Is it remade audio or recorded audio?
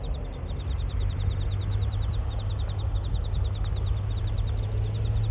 recorded